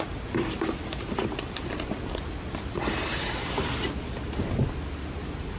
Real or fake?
real